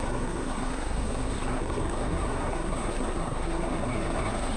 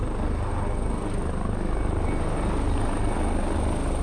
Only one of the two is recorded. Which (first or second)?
second